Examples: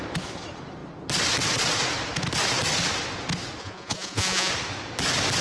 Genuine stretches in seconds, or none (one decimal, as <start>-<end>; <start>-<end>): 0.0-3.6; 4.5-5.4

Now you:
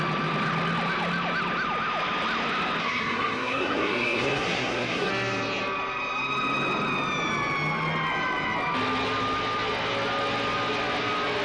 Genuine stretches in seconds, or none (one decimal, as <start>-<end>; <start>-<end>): 0.0-2.8; 5.1-11.4

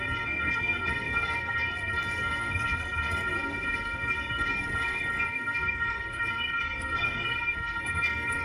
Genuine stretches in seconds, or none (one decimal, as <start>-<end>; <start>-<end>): none

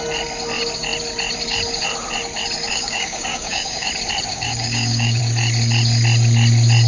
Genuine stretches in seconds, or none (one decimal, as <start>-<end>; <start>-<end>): 0.0-2.7; 3.9-4.3; 5.2-6.9

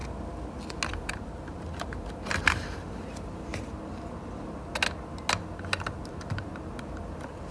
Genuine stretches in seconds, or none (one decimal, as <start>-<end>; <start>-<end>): 0.0-0.9; 3.5-6.1

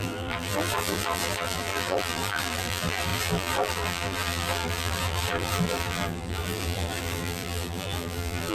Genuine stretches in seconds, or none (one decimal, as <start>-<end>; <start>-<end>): none

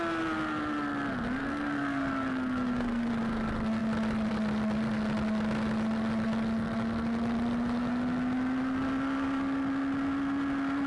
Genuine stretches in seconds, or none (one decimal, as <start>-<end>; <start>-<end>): 0.0-1.4; 3.1-10.9